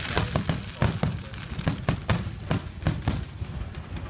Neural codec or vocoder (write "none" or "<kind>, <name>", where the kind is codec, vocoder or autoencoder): none